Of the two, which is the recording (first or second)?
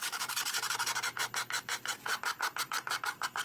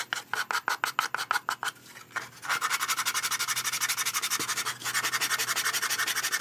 second